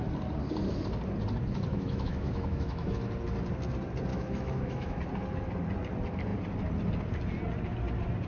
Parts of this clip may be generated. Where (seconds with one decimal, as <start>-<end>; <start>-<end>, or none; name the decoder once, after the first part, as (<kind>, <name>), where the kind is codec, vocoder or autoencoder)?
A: 1.7-3.0 (autoencoder, DAC-VAE); 4.1-5.0